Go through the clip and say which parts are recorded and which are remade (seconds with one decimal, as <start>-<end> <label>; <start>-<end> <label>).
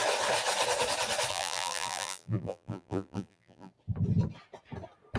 0.0-1.3 recorded; 1.3-3.7 remade; 3.7-5.2 recorded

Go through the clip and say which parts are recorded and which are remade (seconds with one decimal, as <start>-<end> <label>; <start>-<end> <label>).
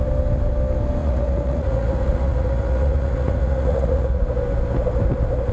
0.0-1.0 recorded; 1.0-4.2 remade; 4.2-5.5 recorded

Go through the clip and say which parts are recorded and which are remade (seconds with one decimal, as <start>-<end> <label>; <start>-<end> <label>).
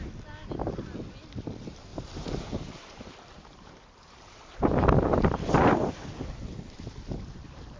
0.0-1.9 recorded; 1.9-5.9 remade; 5.9-7.8 recorded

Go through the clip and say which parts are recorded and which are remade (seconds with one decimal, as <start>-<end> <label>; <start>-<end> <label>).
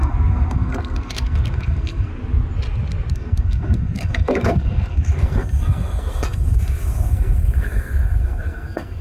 0.0-2.1 remade; 2.1-3.1 recorded; 3.1-9.0 remade